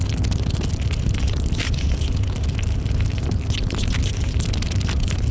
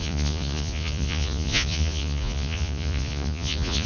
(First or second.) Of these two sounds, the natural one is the first